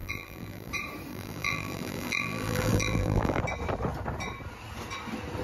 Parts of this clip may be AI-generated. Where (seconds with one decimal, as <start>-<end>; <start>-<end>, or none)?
0.0-0.7; 1.1-3.4